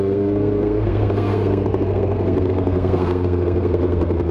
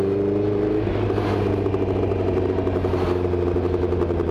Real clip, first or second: second